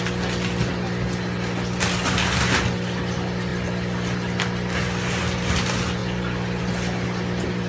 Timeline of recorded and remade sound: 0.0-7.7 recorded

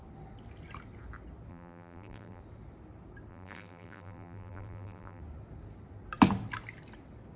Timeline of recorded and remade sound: 0.0-1.5 recorded; 1.5-2.4 remade; 2.4-3.3 recorded; 3.3-5.2 remade; 5.2-7.4 recorded

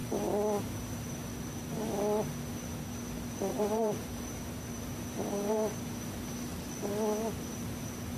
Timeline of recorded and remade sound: 0.0-0.6 recorded; 0.6-1.3 remade; 1.3-3.5 recorded; 3.5-6.5 remade; 6.5-7.5 recorded; 7.5-8.2 remade

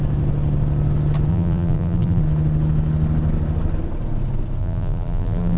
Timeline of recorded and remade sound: 0.0-1.3 recorded; 1.3-2.2 remade; 2.2-4.6 recorded; 4.6-5.6 remade

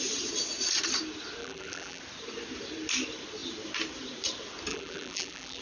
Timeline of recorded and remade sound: 0.0-1.4 recorded; 1.4-2.0 remade; 2.0-4.7 recorded; 4.7-5.6 remade